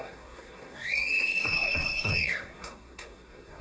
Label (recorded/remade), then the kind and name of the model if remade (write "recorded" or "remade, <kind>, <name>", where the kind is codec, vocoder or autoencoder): remade, codec, SNAC